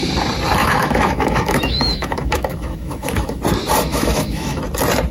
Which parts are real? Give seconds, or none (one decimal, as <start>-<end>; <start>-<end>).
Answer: 0.0-0.6; 3.4-3.9; 4.6-5.1